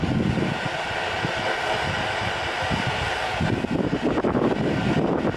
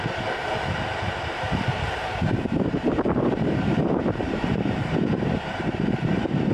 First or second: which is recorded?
first